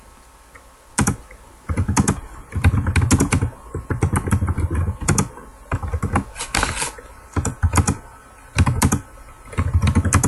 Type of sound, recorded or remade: recorded